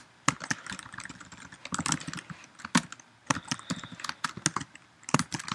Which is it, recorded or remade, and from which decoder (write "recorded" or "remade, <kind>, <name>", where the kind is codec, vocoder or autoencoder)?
recorded